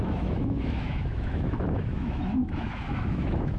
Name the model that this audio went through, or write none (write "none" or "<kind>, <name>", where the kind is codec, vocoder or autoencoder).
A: autoencoder, DAC-VAE